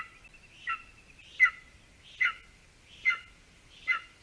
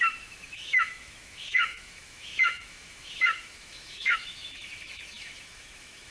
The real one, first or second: first